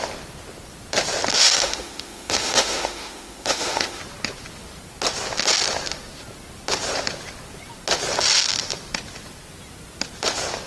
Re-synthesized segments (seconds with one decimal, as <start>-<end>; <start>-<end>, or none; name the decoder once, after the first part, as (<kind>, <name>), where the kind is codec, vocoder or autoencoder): 1.4-4.0 (autoencoder, DAC-VAE)